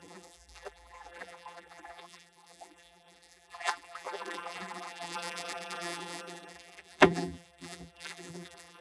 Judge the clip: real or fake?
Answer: fake